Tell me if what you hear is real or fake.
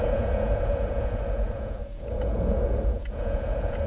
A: fake